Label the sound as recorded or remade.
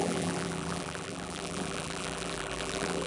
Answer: remade